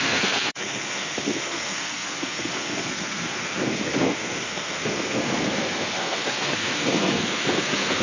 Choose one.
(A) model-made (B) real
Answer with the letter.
A